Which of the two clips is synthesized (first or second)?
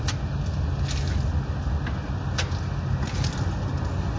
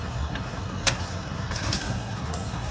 second